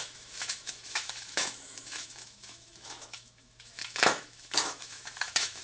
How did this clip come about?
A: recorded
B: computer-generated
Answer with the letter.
B